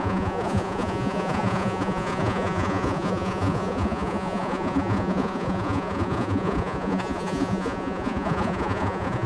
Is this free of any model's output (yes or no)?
no